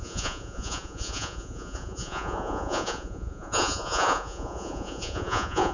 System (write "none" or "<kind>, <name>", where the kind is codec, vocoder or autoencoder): vocoder, Vocos